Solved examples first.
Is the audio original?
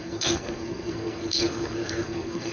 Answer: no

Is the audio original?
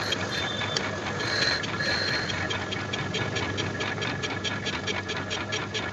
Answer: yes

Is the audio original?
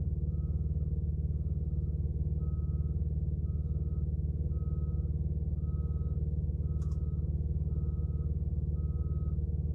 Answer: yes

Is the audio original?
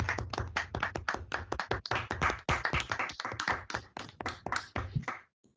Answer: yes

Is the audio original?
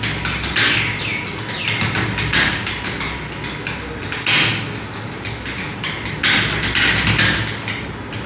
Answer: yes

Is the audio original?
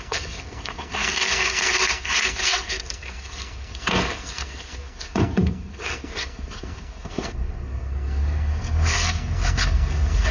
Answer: no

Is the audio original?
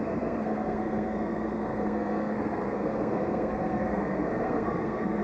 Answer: no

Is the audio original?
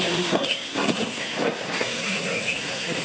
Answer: no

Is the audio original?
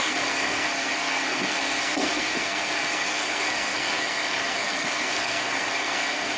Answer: no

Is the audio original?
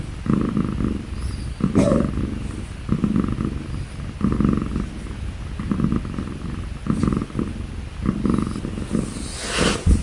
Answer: yes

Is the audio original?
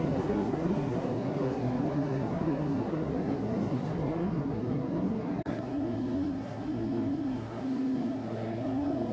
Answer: no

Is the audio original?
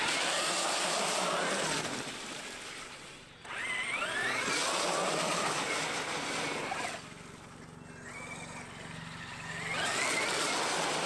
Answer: yes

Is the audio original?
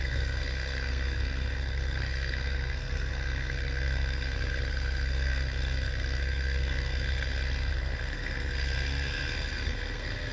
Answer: no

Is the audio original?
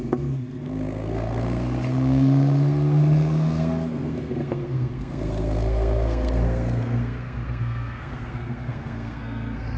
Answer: no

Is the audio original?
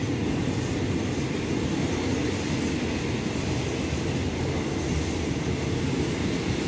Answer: yes